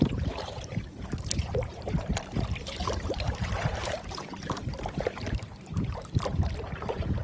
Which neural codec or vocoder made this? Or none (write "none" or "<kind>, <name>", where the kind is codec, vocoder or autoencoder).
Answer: vocoder, BigVGAN v2